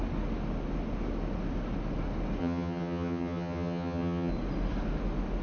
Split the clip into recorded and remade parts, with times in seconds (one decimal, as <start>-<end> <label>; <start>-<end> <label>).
0.0-2.4 recorded; 2.4-4.3 remade; 4.3-5.4 recorded